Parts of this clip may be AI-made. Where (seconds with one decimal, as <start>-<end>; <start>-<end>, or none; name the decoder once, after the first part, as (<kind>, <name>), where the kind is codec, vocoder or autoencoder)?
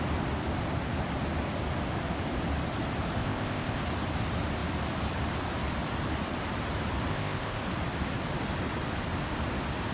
3.2-3.8 (codec, ZipCodec); 7.1-7.6